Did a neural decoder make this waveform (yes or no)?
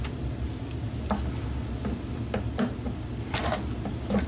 no